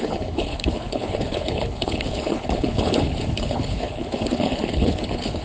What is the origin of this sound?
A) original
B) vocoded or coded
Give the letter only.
B